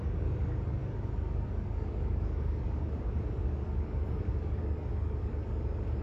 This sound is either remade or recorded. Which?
remade